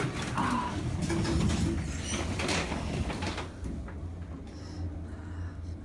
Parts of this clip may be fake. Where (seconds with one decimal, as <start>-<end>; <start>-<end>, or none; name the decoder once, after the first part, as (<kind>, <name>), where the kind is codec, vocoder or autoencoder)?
none

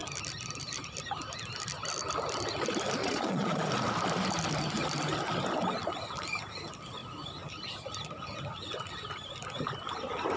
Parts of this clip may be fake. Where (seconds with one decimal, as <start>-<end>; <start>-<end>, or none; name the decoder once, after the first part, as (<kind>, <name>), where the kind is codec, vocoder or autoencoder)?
3.0-3.7 (vocoder, Vocos)

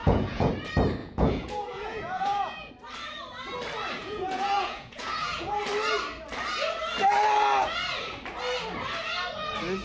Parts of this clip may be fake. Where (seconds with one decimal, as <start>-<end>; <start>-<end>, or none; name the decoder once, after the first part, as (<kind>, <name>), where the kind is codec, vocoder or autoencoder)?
0.0-0.5 (vocoder, Vocos); 1.0-2.7; 4.0-5.6

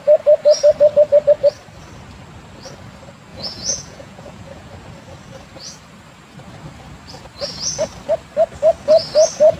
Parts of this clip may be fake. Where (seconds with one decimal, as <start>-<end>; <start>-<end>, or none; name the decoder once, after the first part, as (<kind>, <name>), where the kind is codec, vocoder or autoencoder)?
3.3-4.7 (vocoder, Vocos)

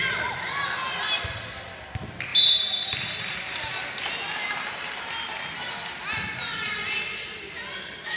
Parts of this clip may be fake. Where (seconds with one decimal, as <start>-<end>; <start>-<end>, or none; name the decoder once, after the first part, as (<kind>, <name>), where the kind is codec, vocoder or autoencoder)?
none

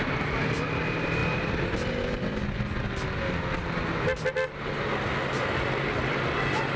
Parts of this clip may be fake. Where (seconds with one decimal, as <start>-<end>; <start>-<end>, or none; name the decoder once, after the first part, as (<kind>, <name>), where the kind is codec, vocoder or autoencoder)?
none

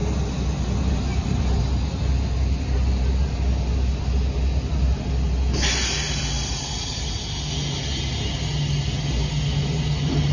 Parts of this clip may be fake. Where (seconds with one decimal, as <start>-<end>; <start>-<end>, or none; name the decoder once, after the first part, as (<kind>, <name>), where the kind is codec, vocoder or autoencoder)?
none